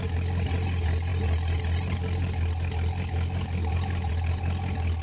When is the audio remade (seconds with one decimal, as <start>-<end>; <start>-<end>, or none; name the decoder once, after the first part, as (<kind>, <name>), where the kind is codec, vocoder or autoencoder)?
none